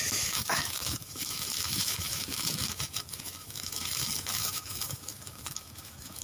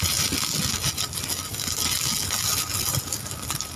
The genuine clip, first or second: second